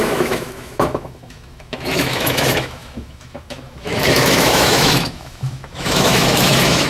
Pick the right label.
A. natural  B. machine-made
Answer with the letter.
B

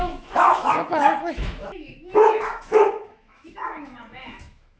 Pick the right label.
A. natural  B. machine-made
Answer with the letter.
B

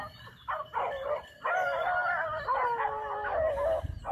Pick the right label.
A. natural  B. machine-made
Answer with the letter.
A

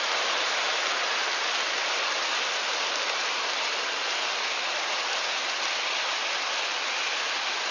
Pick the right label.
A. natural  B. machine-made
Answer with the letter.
A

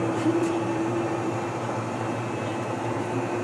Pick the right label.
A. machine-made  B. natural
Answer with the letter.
A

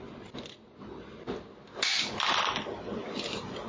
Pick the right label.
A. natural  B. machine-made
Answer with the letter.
A